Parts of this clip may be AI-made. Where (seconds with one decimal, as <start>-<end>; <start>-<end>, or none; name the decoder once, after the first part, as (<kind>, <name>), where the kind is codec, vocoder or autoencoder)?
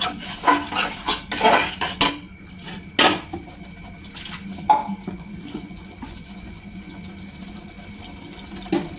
4.8-7.1 (vocoder, Vocos)